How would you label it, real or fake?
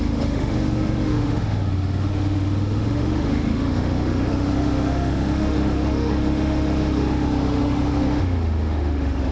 fake